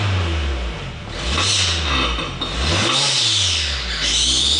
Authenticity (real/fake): real